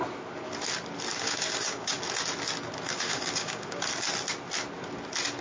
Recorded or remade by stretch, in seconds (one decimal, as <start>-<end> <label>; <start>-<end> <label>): 0.0-1.1 recorded; 1.1-2.0 remade; 2.0-2.9 recorded; 2.9-3.9 remade; 3.9-5.4 recorded